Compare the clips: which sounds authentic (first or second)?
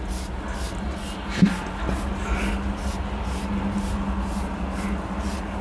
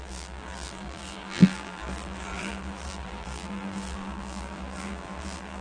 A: first